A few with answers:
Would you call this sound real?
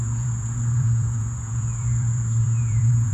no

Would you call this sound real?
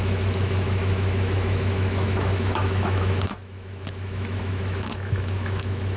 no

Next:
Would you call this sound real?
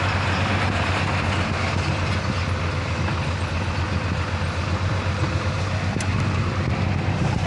yes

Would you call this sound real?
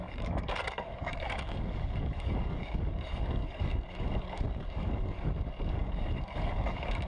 no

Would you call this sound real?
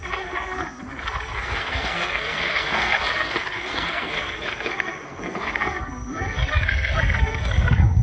no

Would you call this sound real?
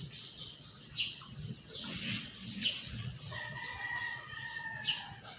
no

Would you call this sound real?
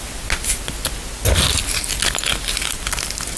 yes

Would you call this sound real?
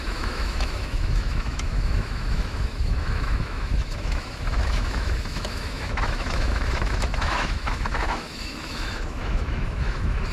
no